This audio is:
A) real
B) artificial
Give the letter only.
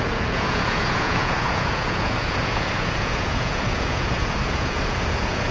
B